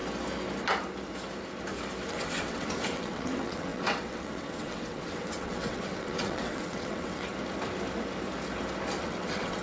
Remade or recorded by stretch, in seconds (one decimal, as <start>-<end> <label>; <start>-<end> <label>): 0.0-2.1 recorded; 2.1-7.3 remade; 7.3-9.0 recorded; 9.0-9.6 remade